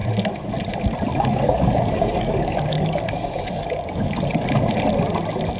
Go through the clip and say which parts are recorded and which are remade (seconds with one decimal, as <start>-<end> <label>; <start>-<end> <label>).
0.0-1.1 recorded; 1.1-4.5 remade; 4.5-5.6 recorded